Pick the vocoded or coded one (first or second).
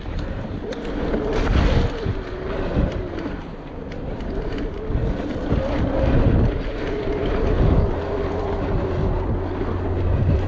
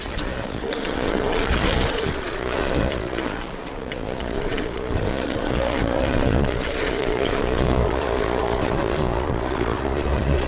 second